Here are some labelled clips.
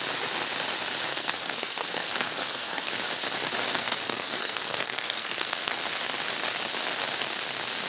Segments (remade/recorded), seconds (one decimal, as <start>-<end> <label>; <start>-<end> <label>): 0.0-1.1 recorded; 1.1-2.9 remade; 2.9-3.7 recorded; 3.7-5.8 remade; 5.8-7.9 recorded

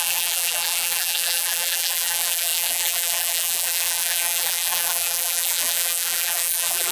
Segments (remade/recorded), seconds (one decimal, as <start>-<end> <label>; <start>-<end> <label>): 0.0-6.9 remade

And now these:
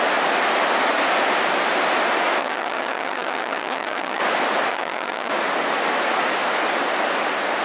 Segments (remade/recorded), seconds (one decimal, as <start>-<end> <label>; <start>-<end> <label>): 0.0-2.4 recorded; 2.4-4.2 remade; 4.2-4.7 recorded; 4.7-5.3 remade; 5.3-7.6 recorded

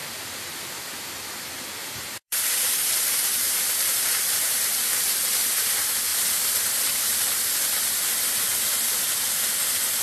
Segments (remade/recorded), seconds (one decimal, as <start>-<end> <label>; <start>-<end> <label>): 0.0-1.8 recorded; 1.8-4.7 remade; 4.7-10.0 recorded

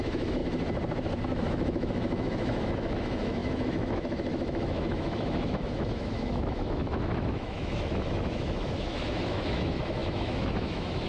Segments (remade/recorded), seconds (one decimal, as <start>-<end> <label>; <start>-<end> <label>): 0.0-0.4 remade; 0.4-1.2 recorded; 1.2-11.1 remade